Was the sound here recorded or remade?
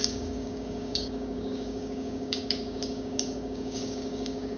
remade